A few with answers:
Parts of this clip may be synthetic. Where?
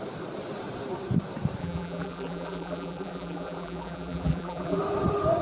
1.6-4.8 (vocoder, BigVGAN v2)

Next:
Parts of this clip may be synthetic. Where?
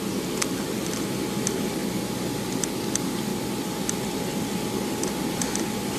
0.0-1.8 (vocoder, BigVGAN v2); 2.9-3.3; 3.9-6.0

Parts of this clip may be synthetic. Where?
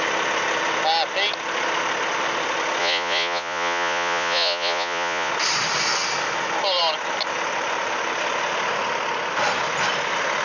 2.8-5.3 (vocoder, Vocos)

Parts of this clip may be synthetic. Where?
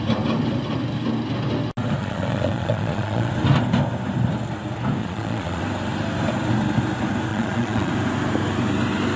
2.0-3.3 (vocoder, Vocos); 5.0-5.6; 7.3-7.9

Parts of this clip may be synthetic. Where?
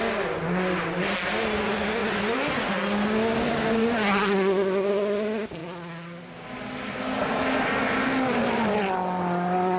none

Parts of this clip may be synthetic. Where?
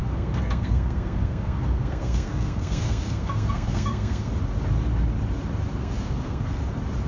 0.0-4.3 (codec, SNAC); 5.8-6.6